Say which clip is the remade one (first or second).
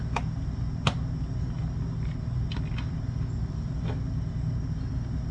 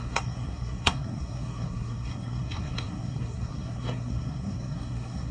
second